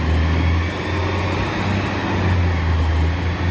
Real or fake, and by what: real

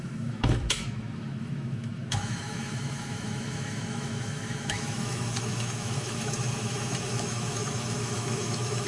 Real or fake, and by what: fake, autoencoder, DAC-VAE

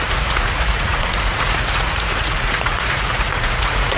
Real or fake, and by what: fake, vocoder, Vocos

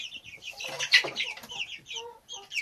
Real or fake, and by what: fake, vocoder, BigVGAN v2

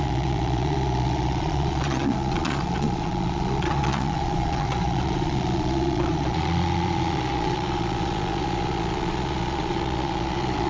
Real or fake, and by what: fake, vocoder, Vocos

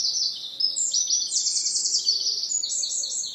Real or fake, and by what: real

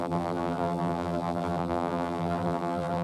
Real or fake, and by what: fake, vocoder, BigVGAN v2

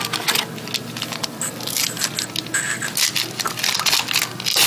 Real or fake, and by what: real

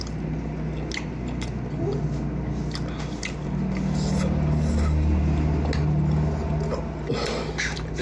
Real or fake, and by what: real